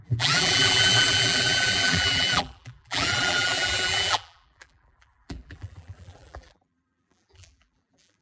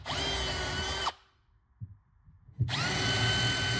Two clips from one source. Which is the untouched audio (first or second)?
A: second